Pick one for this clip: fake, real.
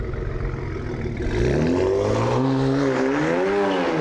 real